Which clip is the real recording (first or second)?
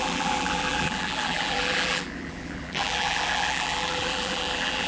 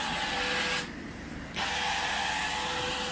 second